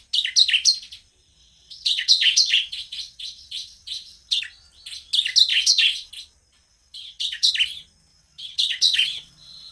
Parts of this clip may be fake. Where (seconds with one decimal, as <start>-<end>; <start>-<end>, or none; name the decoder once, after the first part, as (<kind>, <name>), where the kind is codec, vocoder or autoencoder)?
1.4-4.4 (vocoder, WaveNeXt); 5.5-6.1; 6.7-7.5; 8.1-9.7